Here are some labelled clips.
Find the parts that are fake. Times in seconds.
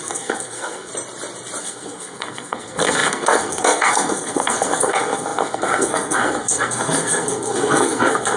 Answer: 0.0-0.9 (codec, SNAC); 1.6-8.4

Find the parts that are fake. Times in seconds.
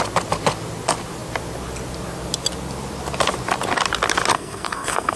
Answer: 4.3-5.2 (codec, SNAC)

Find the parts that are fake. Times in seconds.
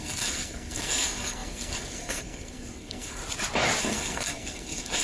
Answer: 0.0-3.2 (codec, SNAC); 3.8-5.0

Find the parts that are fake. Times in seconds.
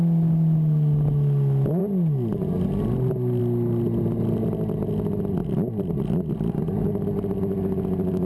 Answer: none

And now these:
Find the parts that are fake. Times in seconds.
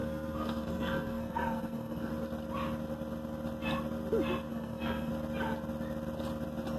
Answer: 0.0-2.1 (codec, SNAC); 4.5-5.1